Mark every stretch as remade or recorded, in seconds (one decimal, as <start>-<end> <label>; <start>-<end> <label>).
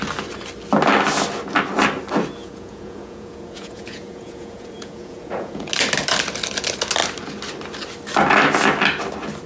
0.0-2.4 recorded; 2.4-5.7 remade; 5.7-9.5 recorded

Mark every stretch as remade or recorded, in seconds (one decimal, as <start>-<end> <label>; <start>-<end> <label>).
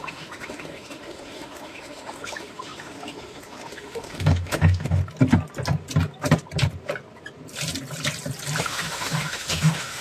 0.0-5.0 remade; 5.0-8.6 recorded; 8.6-10.0 remade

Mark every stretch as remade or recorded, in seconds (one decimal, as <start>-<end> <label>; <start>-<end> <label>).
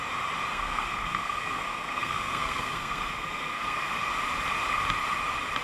0.0-0.5 recorded; 0.5-3.9 remade; 3.9-5.6 recorded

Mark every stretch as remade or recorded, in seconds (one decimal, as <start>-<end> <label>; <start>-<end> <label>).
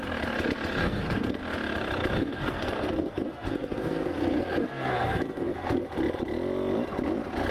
0.0-0.8 recorded; 0.8-1.4 remade; 1.4-2.2 recorded; 2.2-5.9 remade; 5.9-7.5 recorded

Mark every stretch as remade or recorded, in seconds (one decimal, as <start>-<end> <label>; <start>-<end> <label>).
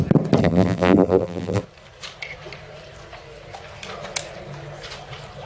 0.0-0.4 recorded; 0.4-1.6 remade; 1.6-5.5 recorded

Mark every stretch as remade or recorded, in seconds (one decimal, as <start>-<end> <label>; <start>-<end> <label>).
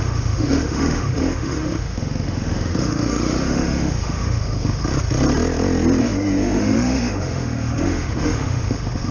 0.0-4.8 remade; 4.8-6.0 recorded; 6.0-9.1 remade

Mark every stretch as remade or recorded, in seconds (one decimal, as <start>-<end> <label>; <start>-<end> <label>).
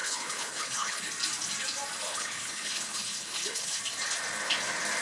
0.0-1.0 remade; 1.0-2.1 recorded; 2.1-3.8 remade; 3.8-5.0 recorded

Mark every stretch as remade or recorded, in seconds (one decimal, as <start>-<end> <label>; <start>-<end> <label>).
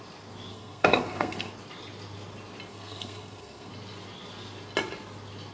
0.0-0.5 recorded; 0.5-1.5 remade; 1.5-2.7 recorded; 2.7-3.7 remade; 3.7-5.5 recorded